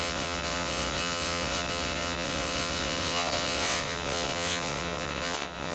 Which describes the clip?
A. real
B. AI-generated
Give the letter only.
B